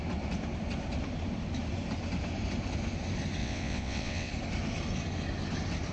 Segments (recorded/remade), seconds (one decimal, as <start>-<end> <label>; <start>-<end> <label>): 0.0-3.4 recorded; 3.4-4.3 remade; 4.3-5.9 recorded

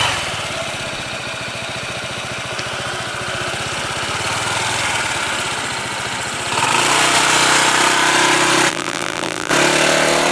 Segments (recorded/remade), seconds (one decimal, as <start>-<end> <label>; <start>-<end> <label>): 0.0-8.7 recorded; 8.7-9.5 remade; 9.5-10.3 recorded

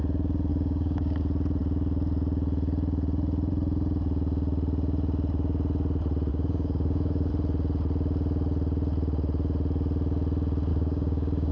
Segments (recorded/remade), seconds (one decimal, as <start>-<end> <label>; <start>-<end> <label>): 0.0-0.5 recorded; 0.5-1.2 remade; 1.2-6.3 recorded; 6.3-7.3 remade; 7.3-10.7 recorded; 10.7-11.5 remade

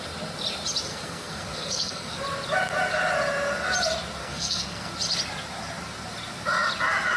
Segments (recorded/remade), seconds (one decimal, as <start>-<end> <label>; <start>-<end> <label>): 0.0-0.9 recorded; 0.9-2.2 remade; 2.2-4.2 recorded; 4.2-4.9 remade; 4.9-7.2 recorded

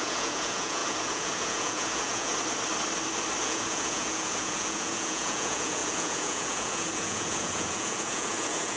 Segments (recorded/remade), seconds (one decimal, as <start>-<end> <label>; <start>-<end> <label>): 0.0-2.3 remade; 2.3-3.4 recorded; 3.4-8.8 remade

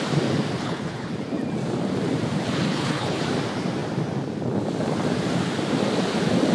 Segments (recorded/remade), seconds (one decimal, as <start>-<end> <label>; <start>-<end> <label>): 0.0-0.6 recorded; 0.6-1.1 remade; 1.1-2.7 recorded; 2.7-3.2 remade; 3.2-6.5 recorded